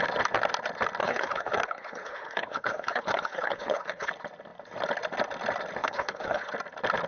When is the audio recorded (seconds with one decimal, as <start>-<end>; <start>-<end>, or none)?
0.0-1.0; 4.1-5.8; 6.5-7.1